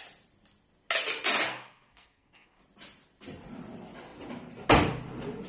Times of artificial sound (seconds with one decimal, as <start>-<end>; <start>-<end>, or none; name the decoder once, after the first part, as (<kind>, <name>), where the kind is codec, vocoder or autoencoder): 1.5-2.6 (codec, SNAC)